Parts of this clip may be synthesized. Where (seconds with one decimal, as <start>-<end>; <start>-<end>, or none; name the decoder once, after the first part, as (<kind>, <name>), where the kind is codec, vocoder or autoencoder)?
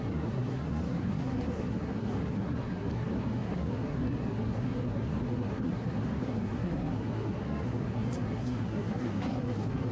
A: 0.0-9.9 (codec, SNAC)